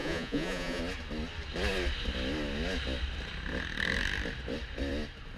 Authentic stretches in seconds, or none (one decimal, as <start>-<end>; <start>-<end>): 0.8-5.4